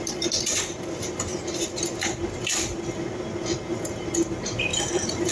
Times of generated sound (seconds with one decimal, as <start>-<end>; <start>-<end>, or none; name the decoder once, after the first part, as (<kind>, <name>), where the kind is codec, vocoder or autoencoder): 4.7-5.3 (vocoder, BigVGAN v2)